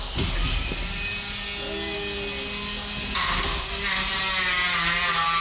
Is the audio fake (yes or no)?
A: no